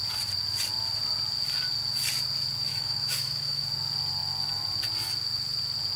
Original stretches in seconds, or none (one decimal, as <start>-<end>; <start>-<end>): 0.0-2.7; 3.6-6.0